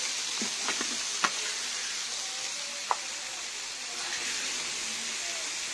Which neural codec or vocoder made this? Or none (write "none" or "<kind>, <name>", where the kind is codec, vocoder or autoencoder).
none